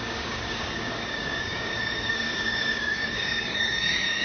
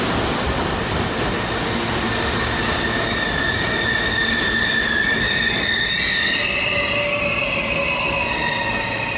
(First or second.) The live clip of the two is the second